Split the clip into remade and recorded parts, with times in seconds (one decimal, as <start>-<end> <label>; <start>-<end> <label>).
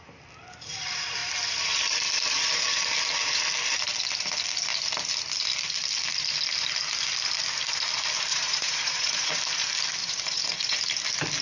0.0-8.3 recorded; 8.3-9.4 remade; 9.4-10.0 recorded; 10.0-10.8 remade; 10.8-11.4 recorded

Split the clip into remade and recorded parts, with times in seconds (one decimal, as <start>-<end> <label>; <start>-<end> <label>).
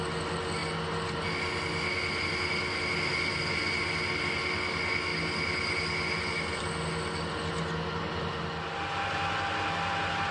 0.0-10.3 recorded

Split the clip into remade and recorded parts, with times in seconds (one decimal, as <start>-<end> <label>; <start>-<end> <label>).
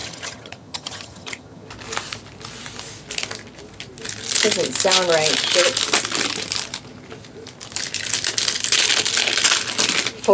0.0-1.7 remade; 1.7-10.3 recorded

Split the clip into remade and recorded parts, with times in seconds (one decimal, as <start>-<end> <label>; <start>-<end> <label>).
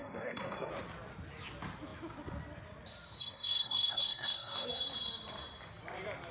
0.0-0.7 remade; 0.7-3.2 recorded; 3.2-4.7 remade; 4.7-6.3 recorded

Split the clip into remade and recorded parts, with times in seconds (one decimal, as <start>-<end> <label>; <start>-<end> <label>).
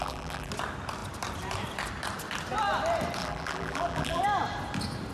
0.0-0.5 remade; 0.5-3.2 recorded; 3.2-4.2 remade; 4.2-5.1 recorded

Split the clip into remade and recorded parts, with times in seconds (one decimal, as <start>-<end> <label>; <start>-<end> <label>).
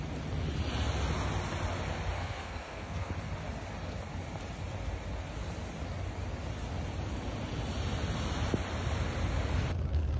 0.0-2.2 recorded; 2.2-3.1 remade; 3.1-10.2 recorded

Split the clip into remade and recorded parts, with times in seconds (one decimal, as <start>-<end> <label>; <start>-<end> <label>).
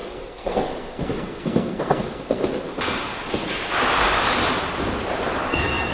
0.0-2.4 remade; 2.4-5.5 recorded; 5.5-5.9 remade